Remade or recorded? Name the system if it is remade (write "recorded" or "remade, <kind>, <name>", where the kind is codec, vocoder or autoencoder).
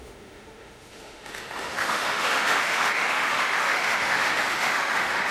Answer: remade, autoencoder, DAC-VAE